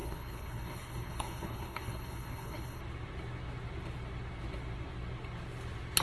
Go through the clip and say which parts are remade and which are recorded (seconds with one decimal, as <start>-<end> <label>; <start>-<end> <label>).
0.0-2.8 remade; 2.8-6.0 recorded